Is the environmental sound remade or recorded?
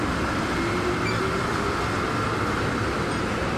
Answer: recorded